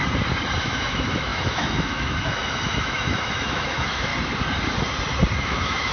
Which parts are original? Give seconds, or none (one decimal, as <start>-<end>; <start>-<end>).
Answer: 0.0-0.6; 4.1-5.4